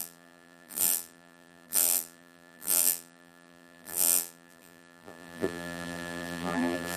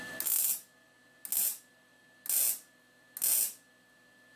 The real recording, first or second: second